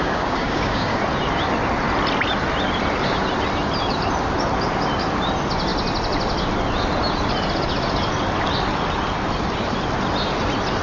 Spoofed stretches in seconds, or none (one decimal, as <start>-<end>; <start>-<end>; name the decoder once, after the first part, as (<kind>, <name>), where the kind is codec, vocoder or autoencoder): 0.0-1.0 (codec, DAC)